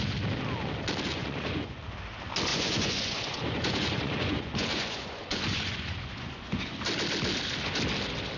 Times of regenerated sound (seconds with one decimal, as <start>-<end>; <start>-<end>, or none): 1.1-1.8; 2.5-6.8